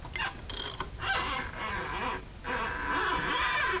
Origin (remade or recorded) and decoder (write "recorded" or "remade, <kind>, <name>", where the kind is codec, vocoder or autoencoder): recorded